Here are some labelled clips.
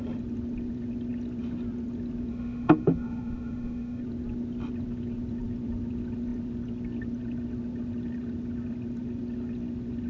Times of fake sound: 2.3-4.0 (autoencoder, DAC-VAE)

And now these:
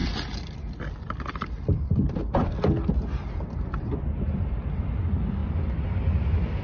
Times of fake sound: 0.0-4.0 (vocoder, BigVGAN v2)

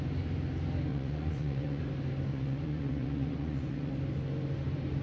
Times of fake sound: 0.9-1.8 (vocoder, Vocos); 2.3-3.9

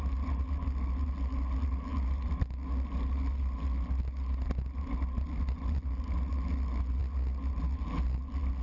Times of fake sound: none

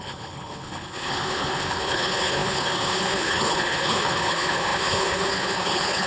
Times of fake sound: 0.0-6.1 (codec, HILCodec)

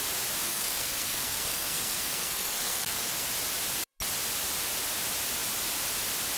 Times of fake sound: 0.4-3.3 (codec, SNAC)

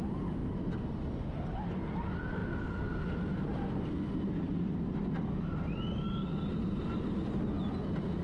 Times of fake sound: none